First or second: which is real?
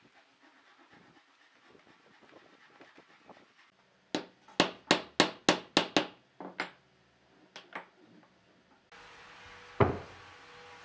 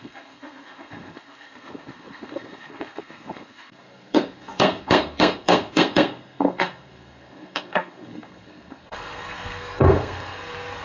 first